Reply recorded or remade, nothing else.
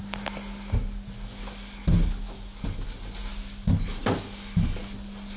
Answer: recorded